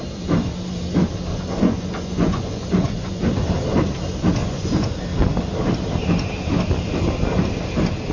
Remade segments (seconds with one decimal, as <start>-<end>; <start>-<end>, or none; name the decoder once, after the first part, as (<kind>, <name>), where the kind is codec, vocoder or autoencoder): 1.3-3.2 (vocoder, Vocos); 4.4-4.9